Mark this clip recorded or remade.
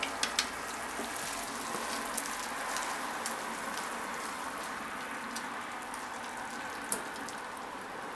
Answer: recorded